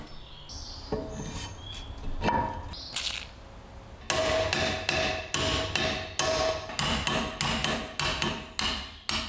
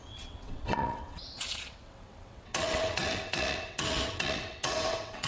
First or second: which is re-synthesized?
second